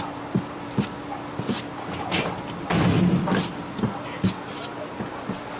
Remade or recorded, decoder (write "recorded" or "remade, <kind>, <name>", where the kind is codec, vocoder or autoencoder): recorded